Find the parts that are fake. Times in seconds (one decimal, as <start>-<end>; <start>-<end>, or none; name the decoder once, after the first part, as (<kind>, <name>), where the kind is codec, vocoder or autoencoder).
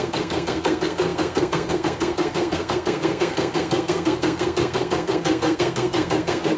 0.0-6.6 (codec, SNAC)